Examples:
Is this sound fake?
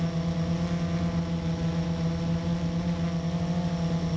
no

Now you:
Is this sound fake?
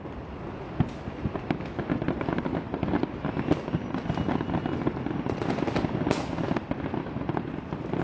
no